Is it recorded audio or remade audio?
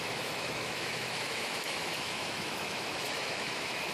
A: remade